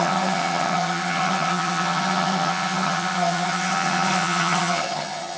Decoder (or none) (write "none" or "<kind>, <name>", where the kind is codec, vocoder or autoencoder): vocoder, HiFi-GAN